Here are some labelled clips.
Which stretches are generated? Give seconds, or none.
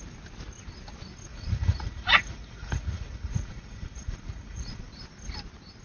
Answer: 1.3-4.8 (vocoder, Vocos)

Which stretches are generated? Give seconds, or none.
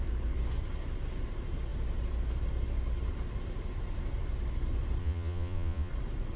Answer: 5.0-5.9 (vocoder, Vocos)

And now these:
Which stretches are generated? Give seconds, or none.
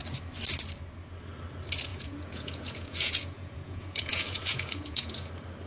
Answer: 1.9-5.3 (vocoder, Vocos)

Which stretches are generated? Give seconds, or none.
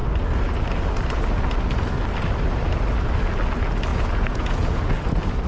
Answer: 3.9-4.8 (vocoder, Vocos)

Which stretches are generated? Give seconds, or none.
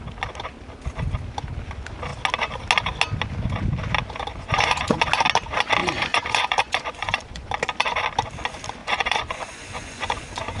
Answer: 4.3-5.0 (vocoder, Vocos); 5.8-7.5; 8.8-10.6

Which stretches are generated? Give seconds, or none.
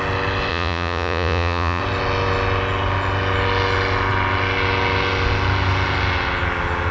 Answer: 0.5-1.8 (vocoder, Vocos)